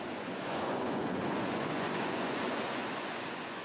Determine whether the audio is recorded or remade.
remade